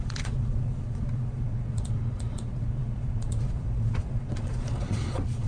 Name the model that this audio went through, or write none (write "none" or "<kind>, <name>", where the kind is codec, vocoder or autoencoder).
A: vocoder, Vocos